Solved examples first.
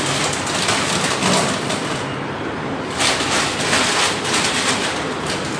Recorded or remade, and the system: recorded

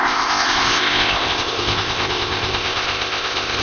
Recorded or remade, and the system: remade, codec, ZipCodec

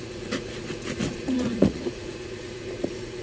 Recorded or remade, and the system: remade, vocoder, Vocos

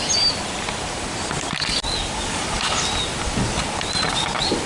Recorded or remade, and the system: recorded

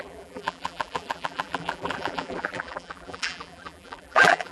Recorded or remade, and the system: remade, vocoder, BigVGAN v2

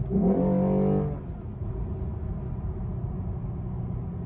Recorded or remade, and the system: recorded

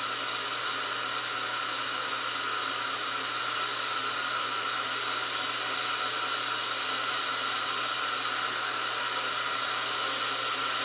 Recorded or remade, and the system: recorded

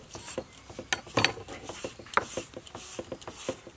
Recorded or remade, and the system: recorded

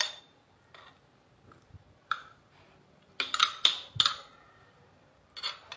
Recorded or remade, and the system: recorded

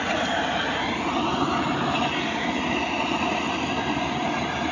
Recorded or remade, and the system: recorded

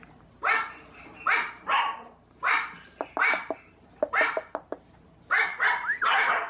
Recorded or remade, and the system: remade, vocoder, BigVGAN v2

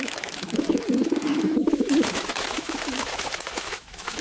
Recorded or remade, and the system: remade, autoencoder, DAC-VAE